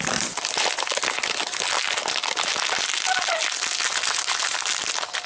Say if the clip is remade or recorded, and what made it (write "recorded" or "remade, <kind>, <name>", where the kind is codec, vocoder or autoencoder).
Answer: recorded